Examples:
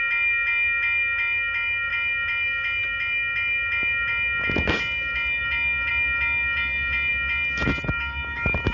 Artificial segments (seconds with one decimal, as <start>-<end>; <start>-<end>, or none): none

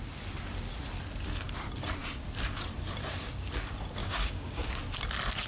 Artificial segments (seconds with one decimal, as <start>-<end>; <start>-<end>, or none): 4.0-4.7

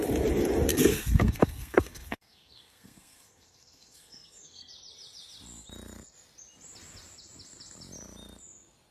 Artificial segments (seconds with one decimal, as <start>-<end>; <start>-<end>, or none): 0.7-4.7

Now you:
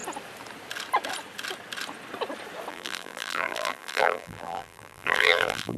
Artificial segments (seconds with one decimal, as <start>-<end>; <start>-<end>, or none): 2.7-5.8

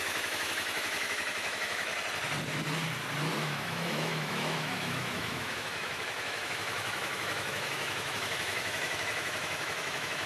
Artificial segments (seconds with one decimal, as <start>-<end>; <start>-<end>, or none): 0.0-1.9; 3.4-10.3

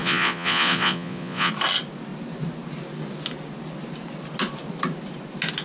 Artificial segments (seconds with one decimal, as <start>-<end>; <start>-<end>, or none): 0.0-1.5